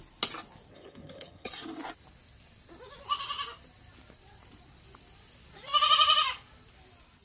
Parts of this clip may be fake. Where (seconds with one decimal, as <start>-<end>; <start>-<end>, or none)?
0.7-1.5